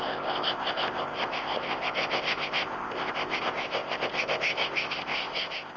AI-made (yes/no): yes